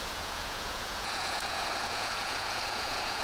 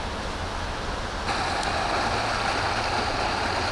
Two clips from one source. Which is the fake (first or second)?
first